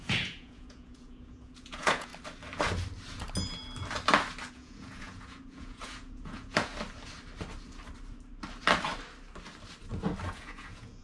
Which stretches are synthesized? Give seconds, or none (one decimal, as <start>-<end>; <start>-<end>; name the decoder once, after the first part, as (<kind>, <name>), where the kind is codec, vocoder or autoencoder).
0.0-2.1 (vocoder, Vocos); 4.5-6.7; 10.3-11.0